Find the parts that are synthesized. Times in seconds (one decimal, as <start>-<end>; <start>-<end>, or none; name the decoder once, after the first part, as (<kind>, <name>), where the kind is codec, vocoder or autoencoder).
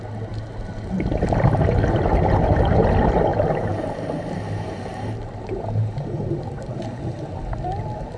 3.3-7.0 (vocoder, BigVGAN v2)